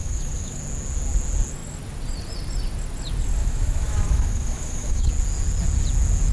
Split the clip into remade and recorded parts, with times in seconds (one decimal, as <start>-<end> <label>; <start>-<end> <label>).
0.0-0.6 remade; 0.6-3.4 recorded; 3.4-5.1 remade; 5.1-6.3 recorded